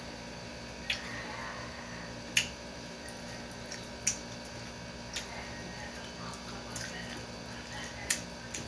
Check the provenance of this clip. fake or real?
real